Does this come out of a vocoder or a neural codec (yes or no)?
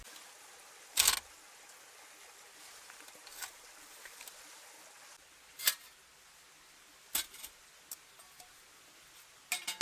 no